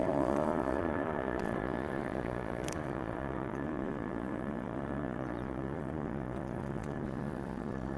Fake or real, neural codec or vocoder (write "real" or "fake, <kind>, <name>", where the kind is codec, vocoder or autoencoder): fake, vocoder, Vocos